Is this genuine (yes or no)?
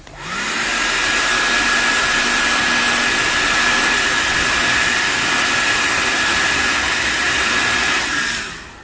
yes